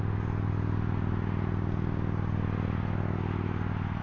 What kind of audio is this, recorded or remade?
recorded